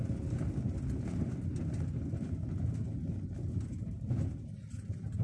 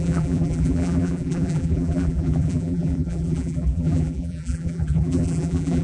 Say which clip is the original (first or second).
first